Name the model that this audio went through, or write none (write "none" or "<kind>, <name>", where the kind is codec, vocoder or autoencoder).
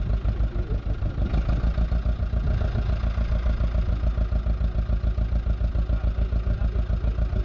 none